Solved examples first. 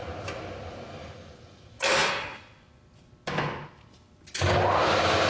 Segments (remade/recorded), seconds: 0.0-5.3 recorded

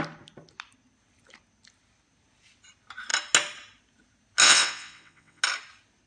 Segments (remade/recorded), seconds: 0.0-4.4 recorded; 4.4-5.4 remade; 5.4-6.1 recorded

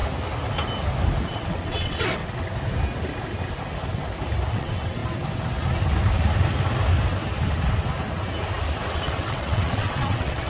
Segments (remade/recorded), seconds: 0.0-1.3 recorded; 1.3-2.2 remade; 2.2-4.5 recorded; 4.5-5.0 remade; 5.0-8.9 recorded; 8.9-10.5 remade

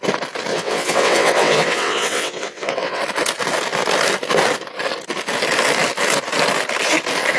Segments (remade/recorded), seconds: 0.0-0.5 recorded; 0.5-3.0 remade; 3.0-7.4 recorded

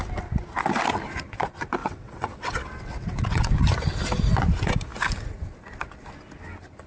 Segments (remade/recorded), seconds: 0.0-1.8 recorded; 1.8-3.5 remade; 3.5-6.9 recorded

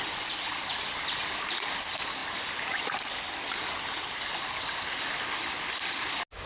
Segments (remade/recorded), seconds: 0.0-6.5 recorded